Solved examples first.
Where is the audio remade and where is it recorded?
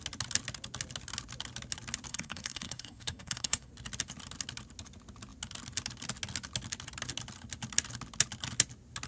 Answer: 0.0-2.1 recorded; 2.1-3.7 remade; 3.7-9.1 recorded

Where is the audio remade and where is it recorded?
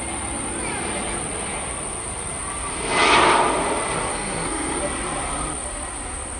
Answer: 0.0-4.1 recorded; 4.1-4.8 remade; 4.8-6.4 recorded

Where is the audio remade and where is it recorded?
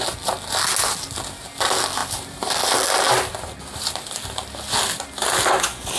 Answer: 0.0-6.0 recorded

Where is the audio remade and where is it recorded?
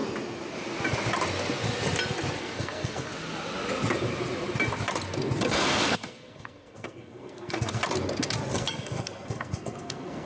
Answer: 0.0-2.4 recorded; 2.4-3.1 remade; 3.1-5.4 recorded; 5.4-7.8 remade; 7.8-8.5 recorded; 8.5-10.2 remade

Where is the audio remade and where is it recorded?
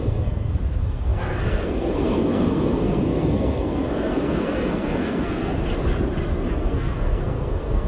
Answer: 0.0-5.5 remade; 5.5-6.5 recorded; 6.5-7.9 remade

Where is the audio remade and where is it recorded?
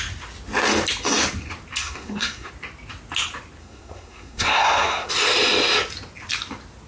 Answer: 0.0-1.8 recorded; 1.8-2.5 remade; 2.5-3.6 recorded; 3.6-5.1 remade; 5.1-6.9 recorded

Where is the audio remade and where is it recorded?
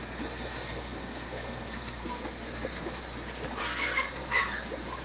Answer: 0.0-3.0 remade; 3.0-3.6 recorded; 3.6-4.4 remade; 4.4-5.0 recorded